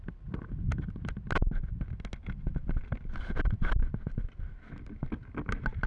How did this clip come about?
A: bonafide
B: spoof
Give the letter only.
A